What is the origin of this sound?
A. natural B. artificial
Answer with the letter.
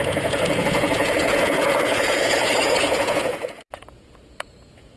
B